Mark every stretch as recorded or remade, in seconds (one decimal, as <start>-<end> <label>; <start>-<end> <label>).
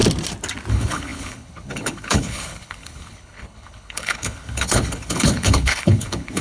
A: 0.0-0.7 recorded; 0.7-6.4 remade